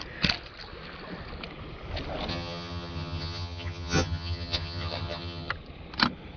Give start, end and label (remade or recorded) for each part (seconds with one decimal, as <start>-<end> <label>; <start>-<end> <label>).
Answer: 0.0-2.3 recorded; 2.3-5.5 remade; 5.5-6.4 recorded